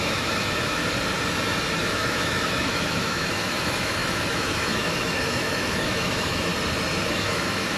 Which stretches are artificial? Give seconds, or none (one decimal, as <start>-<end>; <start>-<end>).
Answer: 0.0-0.8; 1.7-6.5; 7.1-7.8